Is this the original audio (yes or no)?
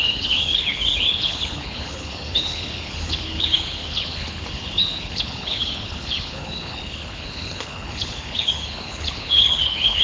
no